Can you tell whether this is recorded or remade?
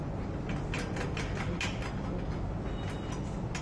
recorded